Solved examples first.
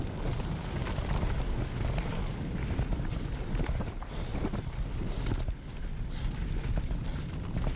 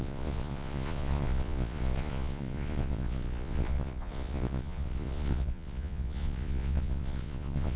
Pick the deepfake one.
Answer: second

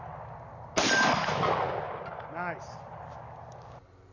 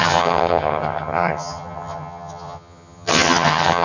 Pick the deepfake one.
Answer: second